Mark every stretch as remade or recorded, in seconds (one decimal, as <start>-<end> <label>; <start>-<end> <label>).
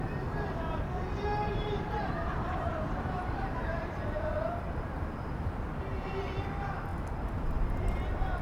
0.0-1.3 recorded; 1.3-5.7 remade; 5.7-8.4 recorded